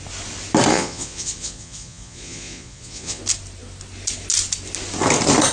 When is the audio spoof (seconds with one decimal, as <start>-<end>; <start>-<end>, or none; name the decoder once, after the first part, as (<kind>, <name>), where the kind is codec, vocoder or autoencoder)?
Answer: 0.7-3.2 (vocoder, Vocos)